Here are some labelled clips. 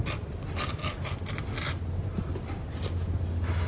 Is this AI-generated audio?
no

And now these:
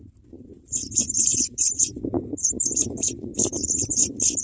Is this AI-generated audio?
yes